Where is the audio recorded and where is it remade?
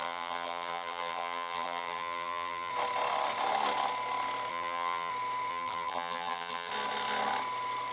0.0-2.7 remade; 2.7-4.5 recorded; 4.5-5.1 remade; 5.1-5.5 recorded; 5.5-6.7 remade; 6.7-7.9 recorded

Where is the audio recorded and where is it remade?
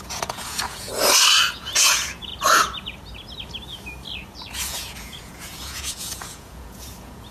0.0-0.9 remade; 0.9-1.5 recorded; 1.5-2.3 remade; 2.3-4.5 recorded; 4.5-7.3 remade